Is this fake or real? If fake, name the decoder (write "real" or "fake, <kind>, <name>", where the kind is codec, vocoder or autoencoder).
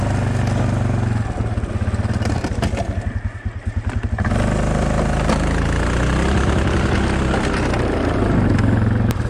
real